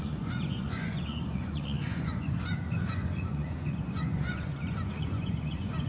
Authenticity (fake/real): fake